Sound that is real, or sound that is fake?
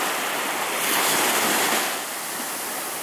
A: real